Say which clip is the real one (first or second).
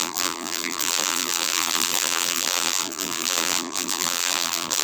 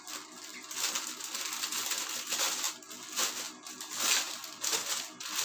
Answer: second